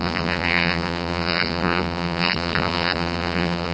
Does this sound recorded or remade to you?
remade